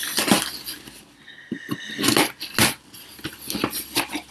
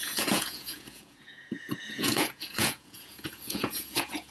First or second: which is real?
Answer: first